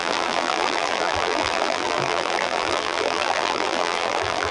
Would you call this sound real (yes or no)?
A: no